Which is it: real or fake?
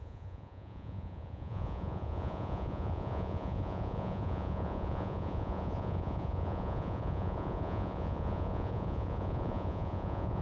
fake